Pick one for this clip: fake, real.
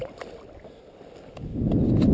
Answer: real